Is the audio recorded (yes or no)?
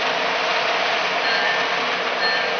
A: yes